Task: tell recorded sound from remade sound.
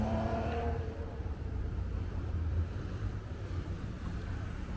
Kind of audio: remade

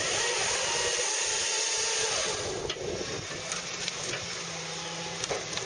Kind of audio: recorded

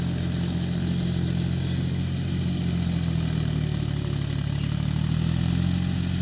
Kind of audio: recorded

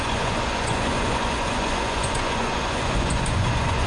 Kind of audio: remade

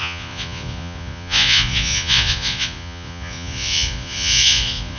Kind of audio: remade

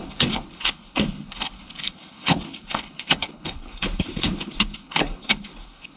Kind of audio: remade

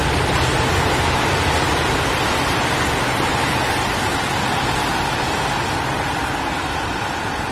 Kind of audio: recorded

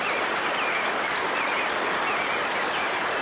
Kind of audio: recorded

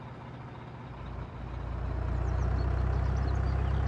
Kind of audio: recorded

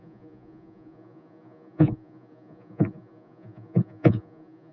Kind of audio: remade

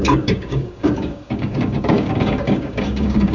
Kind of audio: remade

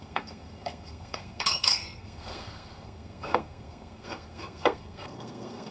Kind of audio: remade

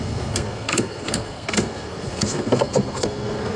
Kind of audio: remade